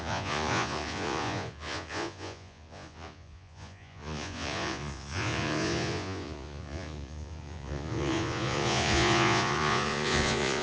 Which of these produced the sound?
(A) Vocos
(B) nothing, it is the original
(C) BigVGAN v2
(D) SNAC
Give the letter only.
A